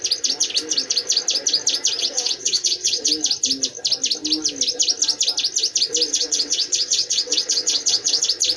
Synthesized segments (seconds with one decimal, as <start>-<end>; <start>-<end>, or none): 2.0-3.1; 6.1-8.2